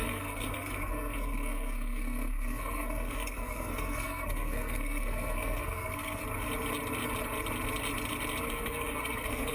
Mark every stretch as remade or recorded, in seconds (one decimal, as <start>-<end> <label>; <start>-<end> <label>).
0.0-6.2 remade; 6.2-8.5 recorded; 8.5-9.5 remade